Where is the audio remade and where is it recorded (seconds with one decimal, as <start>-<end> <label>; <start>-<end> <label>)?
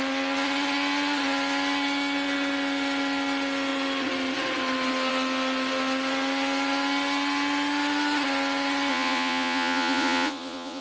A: 0.0-8.9 recorded; 8.9-10.8 remade